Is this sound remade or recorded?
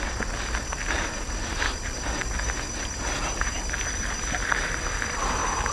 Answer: recorded